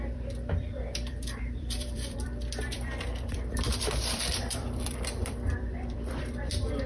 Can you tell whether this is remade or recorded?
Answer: remade